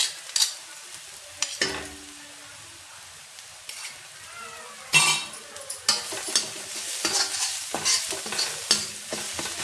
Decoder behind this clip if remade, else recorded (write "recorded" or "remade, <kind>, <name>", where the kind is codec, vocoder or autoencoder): recorded